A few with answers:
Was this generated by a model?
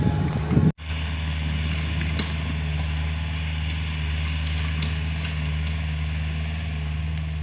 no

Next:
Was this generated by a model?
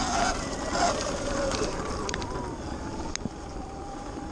no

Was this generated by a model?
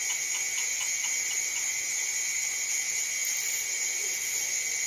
no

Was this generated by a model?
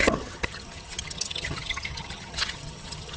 yes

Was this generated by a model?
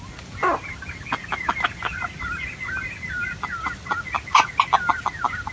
no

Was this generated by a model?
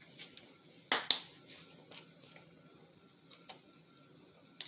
no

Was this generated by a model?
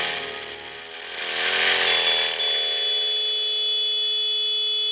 no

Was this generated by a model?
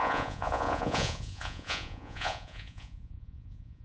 yes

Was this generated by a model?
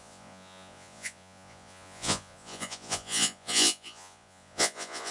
yes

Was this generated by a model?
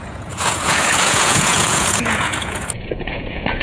yes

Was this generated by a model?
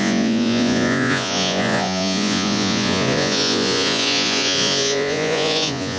yes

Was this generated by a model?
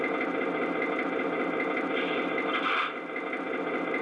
no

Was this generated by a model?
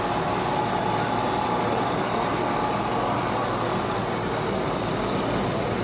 no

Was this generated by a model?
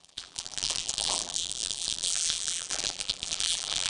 yes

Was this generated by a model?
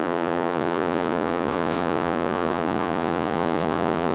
yes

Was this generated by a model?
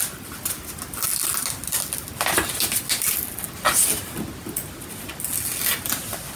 no